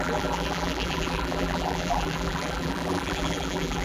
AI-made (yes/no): yes